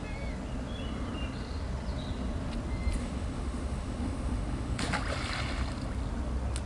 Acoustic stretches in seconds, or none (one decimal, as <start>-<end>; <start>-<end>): 0.0-3.0; 4.8-6.7